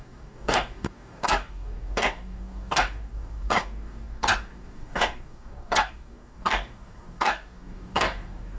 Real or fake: fake